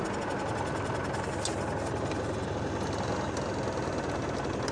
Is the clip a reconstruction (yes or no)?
no